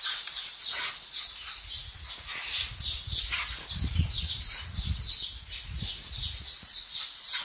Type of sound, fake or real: fake